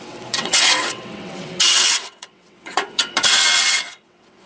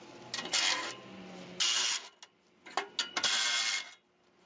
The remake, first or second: first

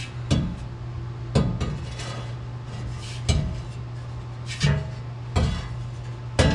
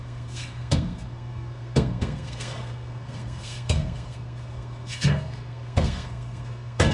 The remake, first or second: second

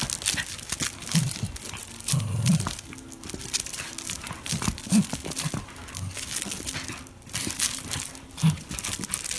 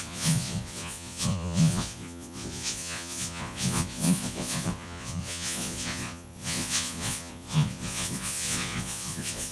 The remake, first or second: second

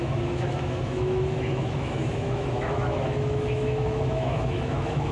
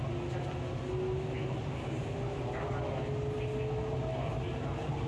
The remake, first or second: first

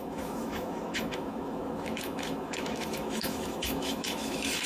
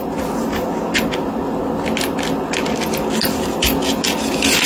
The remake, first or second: first